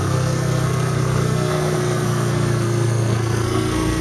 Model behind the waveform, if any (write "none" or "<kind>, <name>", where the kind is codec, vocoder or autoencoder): codec, SNAC